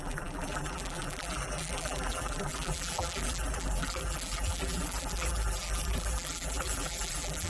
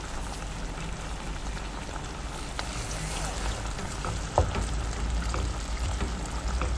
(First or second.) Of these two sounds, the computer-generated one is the first